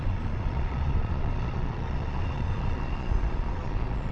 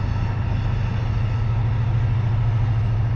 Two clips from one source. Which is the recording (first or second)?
second